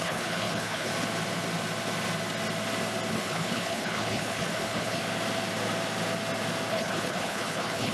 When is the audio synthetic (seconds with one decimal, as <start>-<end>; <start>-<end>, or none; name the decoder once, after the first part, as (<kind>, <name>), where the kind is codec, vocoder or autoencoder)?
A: 0.0-0.9 (codec, HILCodec); 3.1-5.0; 6.7-7.9